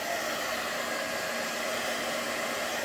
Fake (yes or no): no